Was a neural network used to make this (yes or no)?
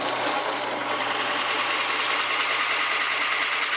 no